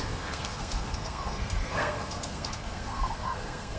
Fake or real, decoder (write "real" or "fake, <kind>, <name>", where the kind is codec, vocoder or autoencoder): fake, codec, SNAC